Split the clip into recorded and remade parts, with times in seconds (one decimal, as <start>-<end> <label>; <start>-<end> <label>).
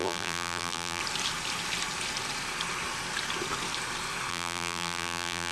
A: 0.0-1.0 remade; 1.0-4.3 recorded; 4.3-5.5 remade